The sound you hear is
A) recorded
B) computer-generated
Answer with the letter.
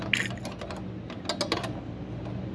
A